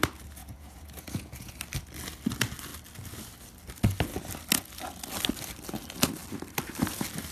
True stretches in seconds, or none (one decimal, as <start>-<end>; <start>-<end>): 0.0-0.4; 1.5-7.3